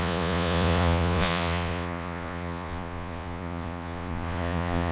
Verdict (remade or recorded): remade